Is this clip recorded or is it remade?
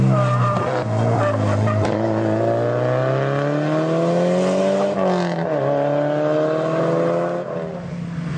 recorded